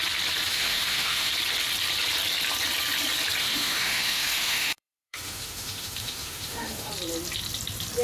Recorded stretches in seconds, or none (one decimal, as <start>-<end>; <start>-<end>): 0.0-0.5; 1.3-3.4; 6.9-8.0